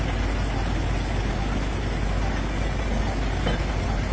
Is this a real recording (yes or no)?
yes